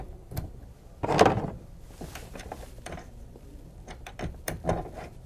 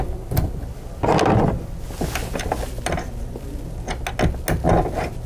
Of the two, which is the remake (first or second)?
first